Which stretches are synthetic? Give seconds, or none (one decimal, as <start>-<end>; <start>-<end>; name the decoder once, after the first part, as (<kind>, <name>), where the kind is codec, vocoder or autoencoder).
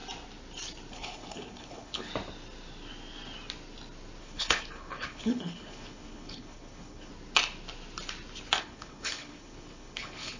0.9-2.1 (codec, HILCodec); 4.2-7.1; 8.6-10.4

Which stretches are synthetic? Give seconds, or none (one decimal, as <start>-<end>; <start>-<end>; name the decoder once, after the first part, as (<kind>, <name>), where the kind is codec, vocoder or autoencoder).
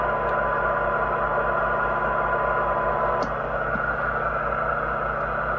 none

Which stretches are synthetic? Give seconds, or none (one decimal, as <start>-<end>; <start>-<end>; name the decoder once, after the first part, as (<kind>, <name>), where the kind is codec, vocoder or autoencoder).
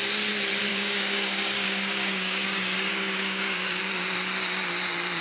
0.7-3.8 (codec, DAC)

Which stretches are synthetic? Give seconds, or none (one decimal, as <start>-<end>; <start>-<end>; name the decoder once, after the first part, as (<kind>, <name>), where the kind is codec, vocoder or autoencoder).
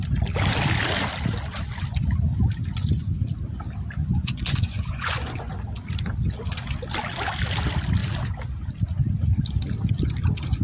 4.0-5.5 (vocoder, Vocos)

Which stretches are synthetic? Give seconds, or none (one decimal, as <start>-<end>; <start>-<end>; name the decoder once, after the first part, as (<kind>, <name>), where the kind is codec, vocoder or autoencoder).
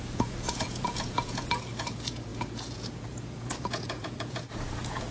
0.0-5.1 (vocoder, Vocos)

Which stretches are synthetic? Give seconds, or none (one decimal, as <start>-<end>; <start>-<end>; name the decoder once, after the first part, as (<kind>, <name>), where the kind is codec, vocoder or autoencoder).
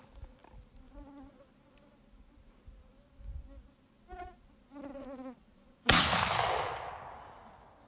4.9-6.0 (vocoder, Vocos)